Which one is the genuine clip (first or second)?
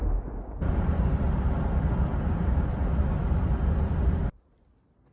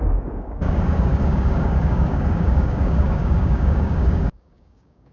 first